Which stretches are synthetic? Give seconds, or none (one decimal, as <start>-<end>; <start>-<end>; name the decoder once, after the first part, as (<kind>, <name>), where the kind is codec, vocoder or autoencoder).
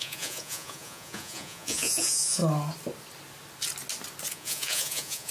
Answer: 0.0-2.4 (vocoder, Vocos); 4.3-5.3